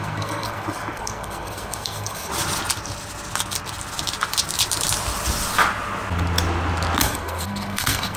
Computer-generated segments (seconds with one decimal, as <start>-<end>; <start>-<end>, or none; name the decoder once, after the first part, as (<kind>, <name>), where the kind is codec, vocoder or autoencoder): 0.0-2.3 (codec, SNAC); 7.0-8.2